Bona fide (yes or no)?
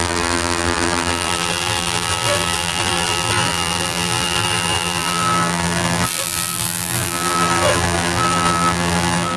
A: no